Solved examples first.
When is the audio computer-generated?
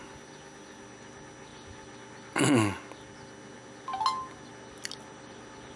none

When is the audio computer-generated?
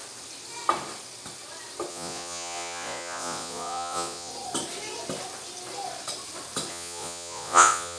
1.9-4.3 (vocoder, Vocos); 6.7-8.0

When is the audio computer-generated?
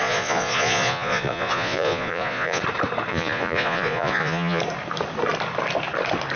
0.0-2.6 (vocoder, Vocos); 3.1-4.6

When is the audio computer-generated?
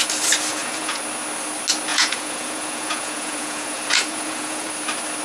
0.5-1.0 (vocoder, Vocos); 1.9-4.7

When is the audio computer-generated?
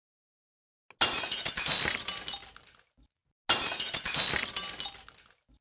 none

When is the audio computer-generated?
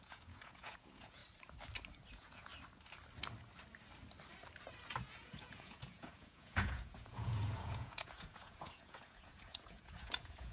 0.0-1.2 (vocoder, Vocos); 2.1-2.5; 5.0-10.5